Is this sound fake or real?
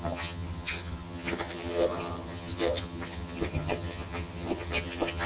fake